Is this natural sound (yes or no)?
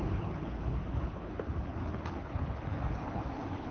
no